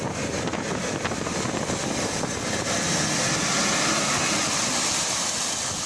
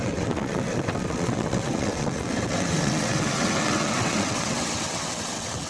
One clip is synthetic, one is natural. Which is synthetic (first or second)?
second